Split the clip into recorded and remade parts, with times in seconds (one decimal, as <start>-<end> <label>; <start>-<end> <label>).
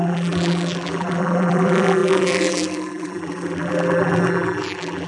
0.0-5.1 remade